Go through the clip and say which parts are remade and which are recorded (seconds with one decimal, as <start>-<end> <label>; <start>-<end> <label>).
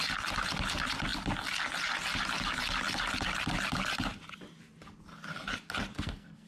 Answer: 0.0-5.9 recorded; 5.9-6.5 remade